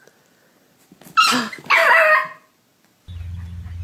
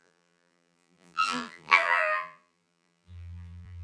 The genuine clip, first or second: first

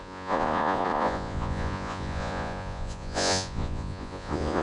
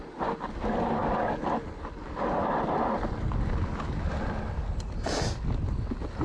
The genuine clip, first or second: second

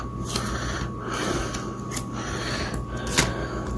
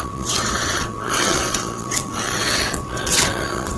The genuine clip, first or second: first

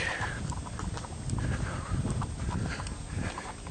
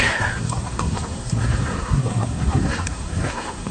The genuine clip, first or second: first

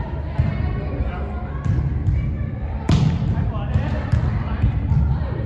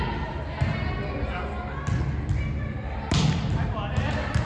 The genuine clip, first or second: second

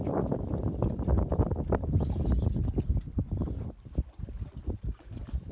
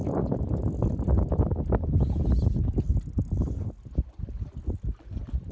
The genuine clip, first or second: second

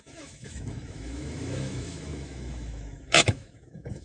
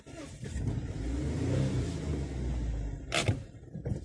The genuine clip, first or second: second